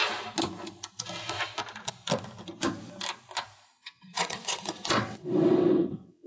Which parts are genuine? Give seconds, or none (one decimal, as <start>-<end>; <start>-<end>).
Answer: 0.0-3.8